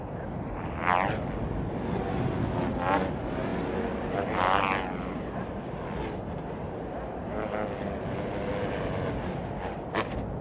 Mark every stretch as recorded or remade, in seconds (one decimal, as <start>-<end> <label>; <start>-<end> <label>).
0.0-10.4 recorded